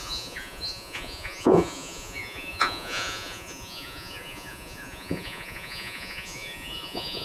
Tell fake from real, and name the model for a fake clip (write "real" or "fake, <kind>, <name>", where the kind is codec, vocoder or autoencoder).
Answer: fake, vocoder, Vocos